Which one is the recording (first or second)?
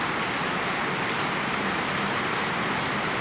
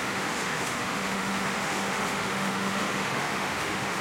first